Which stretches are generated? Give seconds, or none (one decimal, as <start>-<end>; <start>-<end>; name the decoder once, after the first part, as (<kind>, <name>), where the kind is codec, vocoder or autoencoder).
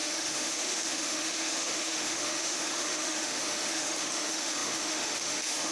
0.0-5.7 (autoencoder, DAC-VAE)